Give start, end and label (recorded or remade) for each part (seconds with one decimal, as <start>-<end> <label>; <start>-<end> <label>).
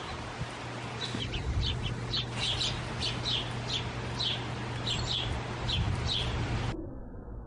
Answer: 0.0-7.5 recorded